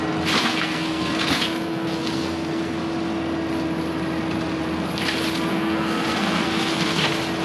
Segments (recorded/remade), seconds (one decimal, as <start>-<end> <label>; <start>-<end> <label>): 0.0-0.4 recorded; 0.4-2.8 remade; 2.8-5.5 recorded; 5.5-7.0 remade; 7.0-7.4 recorded

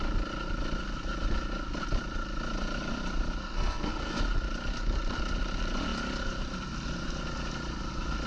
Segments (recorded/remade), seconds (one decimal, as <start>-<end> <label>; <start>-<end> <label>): 0.0-3.4 recorded; 3.4-4.2 remade; 4.2-8.3 recorded

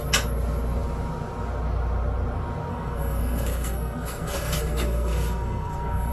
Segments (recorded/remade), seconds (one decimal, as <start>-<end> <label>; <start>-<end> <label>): 0.0-2.7 recorded; 2.7-6.1 remade

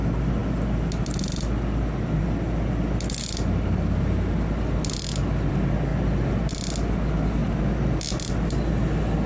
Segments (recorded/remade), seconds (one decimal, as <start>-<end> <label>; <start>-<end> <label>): 0.0-9.3 recorded

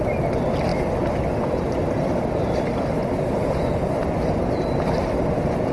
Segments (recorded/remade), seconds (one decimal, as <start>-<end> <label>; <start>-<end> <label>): 0.0-5.7 recorded

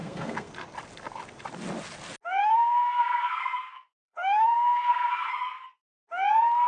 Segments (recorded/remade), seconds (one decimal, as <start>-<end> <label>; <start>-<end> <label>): 0.0-0.5 remade; 0.5-2.4 recorded; 2.4-5.1 remade; 5.1-6.7 recorded